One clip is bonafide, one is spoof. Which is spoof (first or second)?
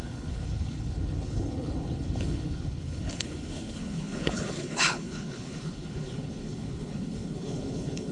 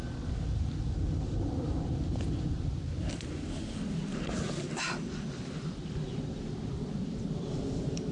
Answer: first